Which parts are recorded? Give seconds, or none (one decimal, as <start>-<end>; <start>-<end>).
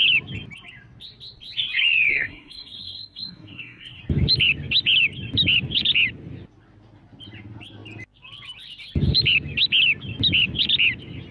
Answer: 0.0-2.1; 4.0-11.3